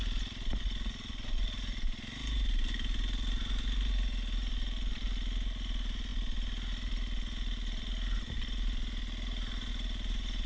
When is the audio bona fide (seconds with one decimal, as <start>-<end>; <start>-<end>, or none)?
0.0-10.5